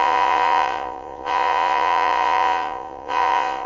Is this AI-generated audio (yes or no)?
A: yes